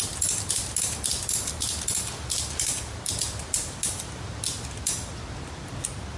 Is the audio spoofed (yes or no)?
no